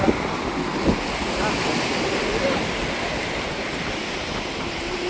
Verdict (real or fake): real